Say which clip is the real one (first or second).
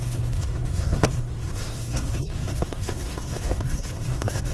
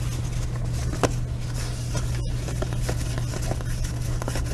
second